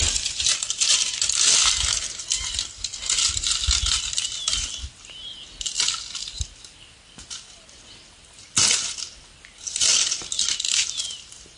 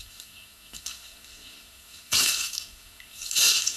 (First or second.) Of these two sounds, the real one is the first